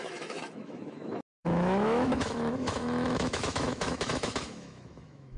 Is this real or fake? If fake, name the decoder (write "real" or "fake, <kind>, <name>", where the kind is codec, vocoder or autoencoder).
fake, autoencoder, DAC-VAE